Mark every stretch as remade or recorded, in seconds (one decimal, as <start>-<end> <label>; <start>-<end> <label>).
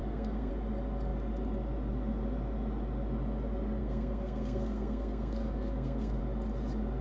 0.0-0.5 remade; 0.5-3.8 recorded; 3.8-6.2 remade; 6.2-7.0 recorded